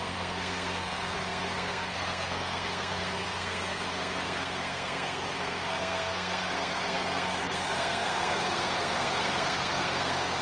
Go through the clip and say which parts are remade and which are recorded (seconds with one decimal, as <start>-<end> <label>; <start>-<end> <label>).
0.0-10.4 remade